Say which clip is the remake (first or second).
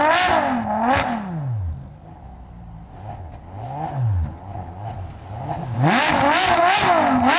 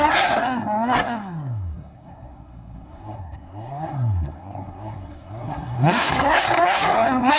second